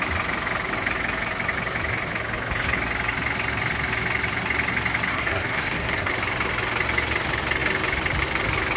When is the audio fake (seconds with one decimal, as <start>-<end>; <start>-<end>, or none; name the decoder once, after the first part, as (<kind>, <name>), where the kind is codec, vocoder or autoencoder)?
5.1-6.1 (codec, SNAC)